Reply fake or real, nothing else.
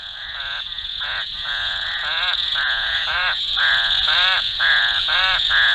fake